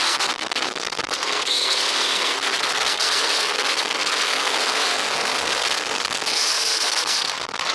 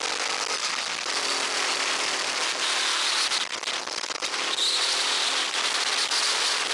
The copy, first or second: first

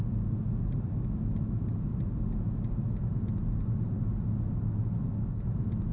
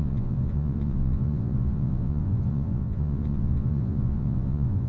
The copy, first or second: second